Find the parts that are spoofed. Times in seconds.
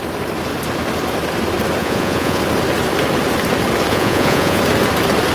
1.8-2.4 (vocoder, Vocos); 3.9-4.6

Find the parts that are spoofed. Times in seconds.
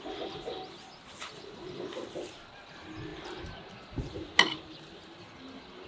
none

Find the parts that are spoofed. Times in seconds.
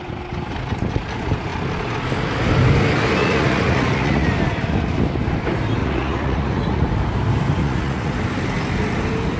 3.2-4.3 (vocoder, Vocos); 5.8-6.9; 7.6-8.1